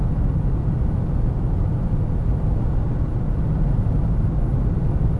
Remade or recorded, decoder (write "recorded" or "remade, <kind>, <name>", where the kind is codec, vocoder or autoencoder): recorded